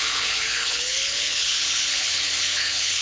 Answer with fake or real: fake